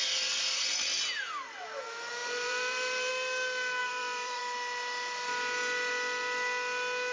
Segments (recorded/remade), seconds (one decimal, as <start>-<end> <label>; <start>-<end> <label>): 0.0-2.2 recorded; 2.2-3.1 remade; 3.1-3.8 recorded; 3.8-4.4 remade; 4.4-7.1 recorded